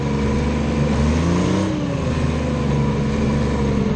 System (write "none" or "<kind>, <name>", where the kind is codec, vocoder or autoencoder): none